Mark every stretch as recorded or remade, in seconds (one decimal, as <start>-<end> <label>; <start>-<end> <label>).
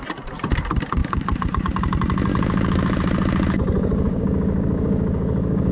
0.0-1.0 recorded; 1.0-1.8 remade; 1.8-2.3 recorded; 2.3-5.7 remade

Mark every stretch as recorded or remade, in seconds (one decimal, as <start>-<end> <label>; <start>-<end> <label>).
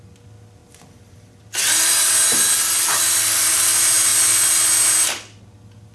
0.0-5.9 recorded